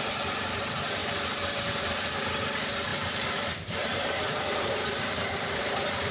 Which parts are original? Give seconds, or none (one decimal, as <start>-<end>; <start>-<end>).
0.0-2.9; 5.1-6.1